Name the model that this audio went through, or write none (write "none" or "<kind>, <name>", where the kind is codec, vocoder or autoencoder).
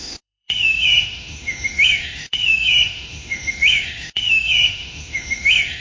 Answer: autoencoder, DAC-VAE